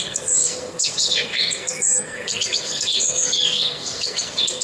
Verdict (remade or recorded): remade